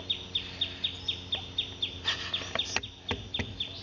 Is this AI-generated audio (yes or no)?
no